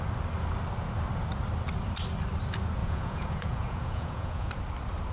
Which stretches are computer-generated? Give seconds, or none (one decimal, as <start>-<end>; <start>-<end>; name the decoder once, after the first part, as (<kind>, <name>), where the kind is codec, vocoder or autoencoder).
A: 2.8-4.5 (vocoder, Vocos)